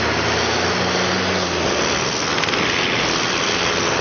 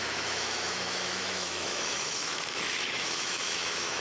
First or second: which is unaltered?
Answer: first